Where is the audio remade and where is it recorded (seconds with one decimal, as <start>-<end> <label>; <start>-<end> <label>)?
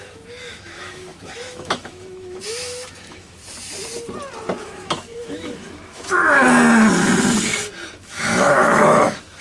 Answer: 0.0-3.4 remade; 3.4-4.6 recorded; 4.6-6.2 remade; 6.2-7.9 recorded; 7.9-9.4 remade